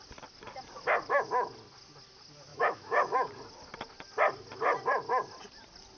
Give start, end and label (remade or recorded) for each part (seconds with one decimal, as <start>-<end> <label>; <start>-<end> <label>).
0.0-2.5 recorded; 2.5-3.3 remade; 3.3-6.0 recorded